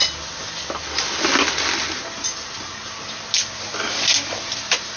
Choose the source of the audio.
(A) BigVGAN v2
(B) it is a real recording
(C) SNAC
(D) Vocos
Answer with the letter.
B